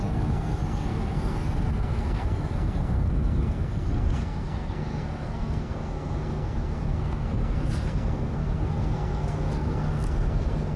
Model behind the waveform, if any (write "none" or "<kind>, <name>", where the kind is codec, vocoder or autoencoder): codec, SNAC